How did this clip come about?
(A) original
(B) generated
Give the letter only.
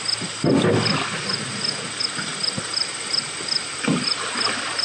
A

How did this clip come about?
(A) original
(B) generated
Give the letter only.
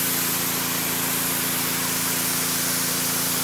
A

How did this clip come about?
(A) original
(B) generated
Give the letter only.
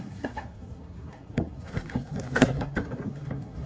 B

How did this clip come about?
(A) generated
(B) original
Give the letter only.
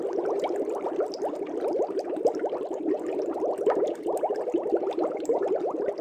B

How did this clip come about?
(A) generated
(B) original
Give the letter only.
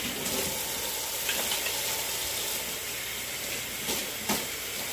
B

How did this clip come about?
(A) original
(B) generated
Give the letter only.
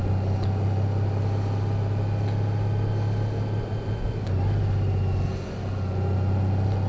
A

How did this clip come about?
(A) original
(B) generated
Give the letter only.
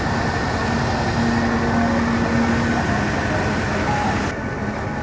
A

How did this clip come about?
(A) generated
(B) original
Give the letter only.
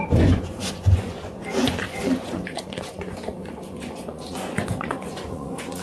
A